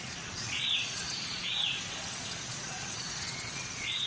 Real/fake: fake